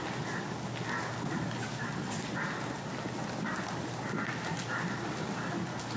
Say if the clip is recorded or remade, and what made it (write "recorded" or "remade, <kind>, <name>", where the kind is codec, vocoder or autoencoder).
recorded